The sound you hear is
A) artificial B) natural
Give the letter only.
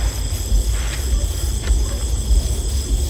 B